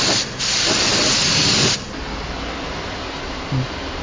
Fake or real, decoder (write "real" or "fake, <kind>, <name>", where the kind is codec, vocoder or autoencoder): real